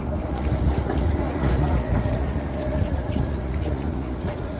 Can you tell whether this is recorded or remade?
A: remade